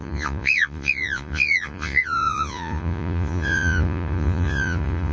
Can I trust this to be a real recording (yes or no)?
no